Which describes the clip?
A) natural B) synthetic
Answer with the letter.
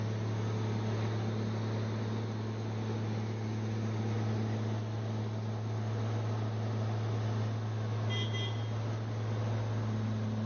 A